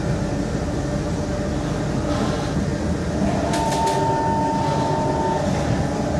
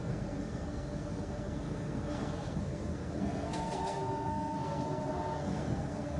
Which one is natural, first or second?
first